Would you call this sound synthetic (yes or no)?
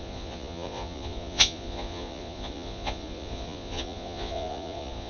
yes